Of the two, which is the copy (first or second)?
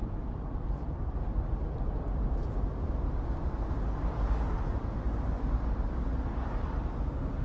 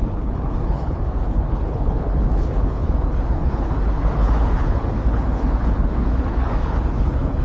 second